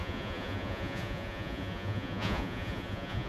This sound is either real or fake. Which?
fake